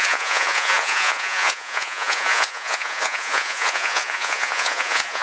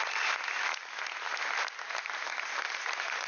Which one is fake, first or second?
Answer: first